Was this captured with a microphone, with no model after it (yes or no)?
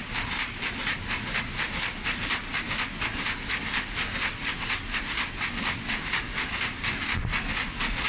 yes